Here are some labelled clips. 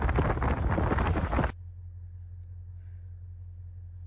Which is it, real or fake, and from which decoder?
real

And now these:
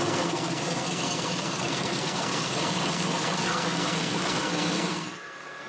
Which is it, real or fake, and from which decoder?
fake, codec, SNAC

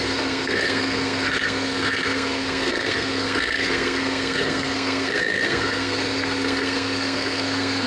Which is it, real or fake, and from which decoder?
fake, codec, SNAC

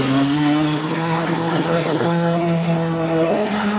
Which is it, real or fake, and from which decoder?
fake, codec, SNAC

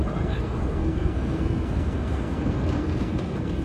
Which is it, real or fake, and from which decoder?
fake, codec, SNAC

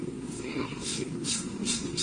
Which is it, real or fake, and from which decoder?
fake, codec, SNAC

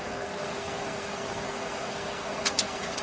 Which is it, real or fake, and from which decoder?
fake, codec, SNAC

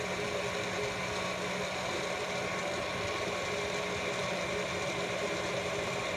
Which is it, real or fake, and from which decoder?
real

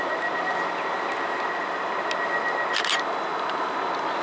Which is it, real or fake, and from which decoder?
real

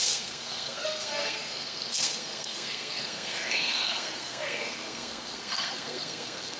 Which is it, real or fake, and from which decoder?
fake, codec, SNAC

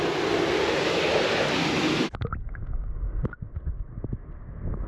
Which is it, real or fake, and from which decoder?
real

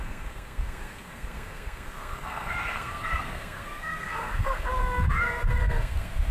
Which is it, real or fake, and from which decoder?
fake, codec, SNAC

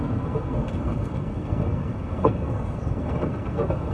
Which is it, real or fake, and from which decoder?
fake, codec, SNAC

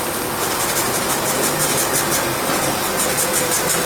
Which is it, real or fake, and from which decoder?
real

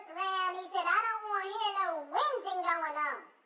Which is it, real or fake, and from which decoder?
real